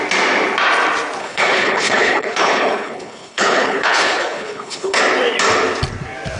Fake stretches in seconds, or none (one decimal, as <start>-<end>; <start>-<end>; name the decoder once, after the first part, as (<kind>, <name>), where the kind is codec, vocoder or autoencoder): 1.2-5.0 (codec, HILCodec)